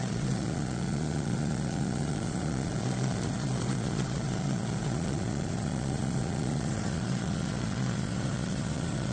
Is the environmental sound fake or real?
fake